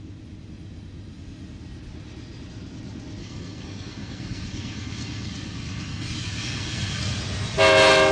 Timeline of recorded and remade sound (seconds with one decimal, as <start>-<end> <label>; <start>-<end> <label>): 0.0-3.2 recorded; 3.2-7.2 remade; 7.2-8.1 recorded